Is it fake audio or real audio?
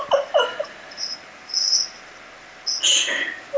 real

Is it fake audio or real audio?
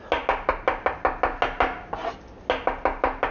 real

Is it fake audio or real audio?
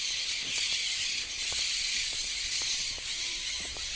real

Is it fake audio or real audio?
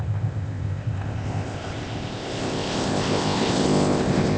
fake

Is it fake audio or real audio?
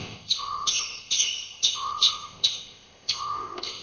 fake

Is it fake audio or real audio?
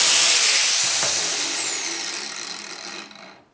real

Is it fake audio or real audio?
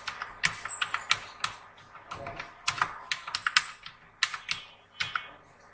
real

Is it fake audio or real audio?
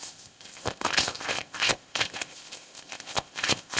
fake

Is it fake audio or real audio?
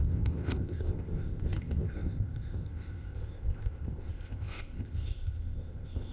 fake